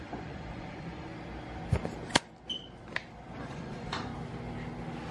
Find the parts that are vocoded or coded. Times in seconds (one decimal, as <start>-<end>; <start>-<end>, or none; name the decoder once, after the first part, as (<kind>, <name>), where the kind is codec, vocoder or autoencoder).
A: 0.0-1.1 (vocoder, Vocos); 3.4-4.1